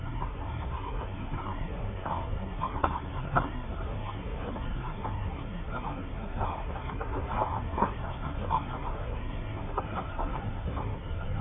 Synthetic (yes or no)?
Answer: yes